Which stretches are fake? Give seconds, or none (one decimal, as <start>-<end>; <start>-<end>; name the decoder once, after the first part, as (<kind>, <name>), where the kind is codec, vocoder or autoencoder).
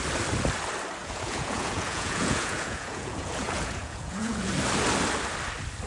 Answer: 1.0-4.5 (vocoder, Vocos)